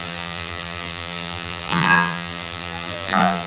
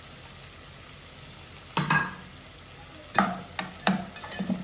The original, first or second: second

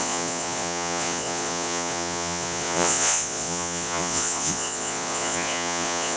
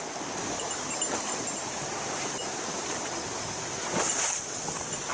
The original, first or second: second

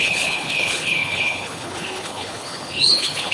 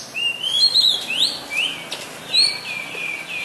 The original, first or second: second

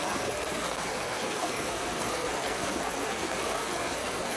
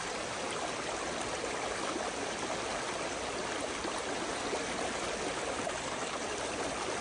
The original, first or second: second